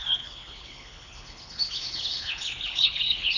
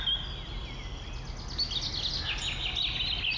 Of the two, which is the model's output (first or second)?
first